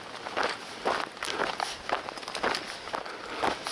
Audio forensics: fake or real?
real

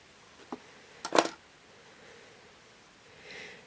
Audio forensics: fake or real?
real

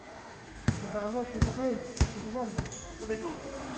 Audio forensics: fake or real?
fake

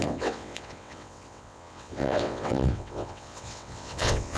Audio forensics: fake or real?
fake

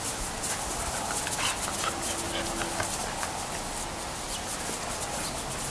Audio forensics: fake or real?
real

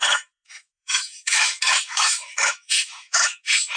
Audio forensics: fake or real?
fake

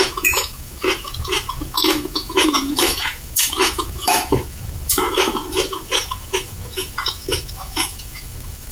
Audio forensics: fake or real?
fake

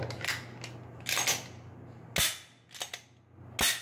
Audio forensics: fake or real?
real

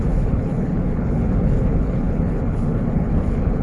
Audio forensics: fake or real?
fake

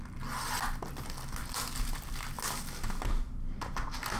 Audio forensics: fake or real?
real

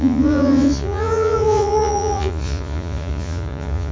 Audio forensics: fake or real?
fake